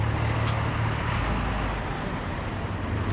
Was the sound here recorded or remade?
recorded